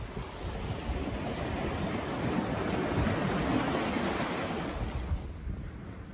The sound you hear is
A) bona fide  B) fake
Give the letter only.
A